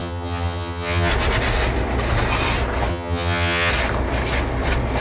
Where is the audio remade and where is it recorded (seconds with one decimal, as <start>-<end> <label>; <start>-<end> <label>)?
0.0-1.1 remade; 1.1-2.9 recorded; 2.9-3.7 remade; 3.7-5.0 recorded